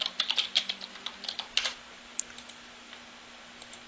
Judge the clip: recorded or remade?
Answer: recorded